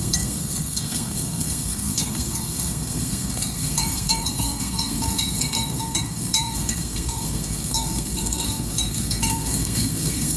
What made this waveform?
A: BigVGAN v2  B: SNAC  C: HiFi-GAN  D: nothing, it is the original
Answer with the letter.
B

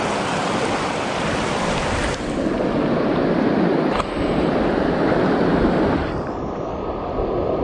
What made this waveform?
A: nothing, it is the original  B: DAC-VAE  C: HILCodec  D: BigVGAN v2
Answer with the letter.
A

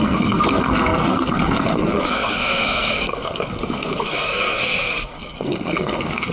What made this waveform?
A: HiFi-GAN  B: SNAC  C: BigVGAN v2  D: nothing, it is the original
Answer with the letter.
B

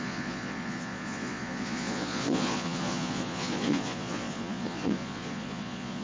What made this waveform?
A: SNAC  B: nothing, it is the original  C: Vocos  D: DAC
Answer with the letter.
C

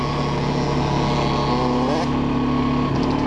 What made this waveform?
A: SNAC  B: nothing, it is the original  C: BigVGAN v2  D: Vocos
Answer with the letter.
B